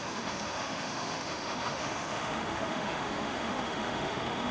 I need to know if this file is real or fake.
fake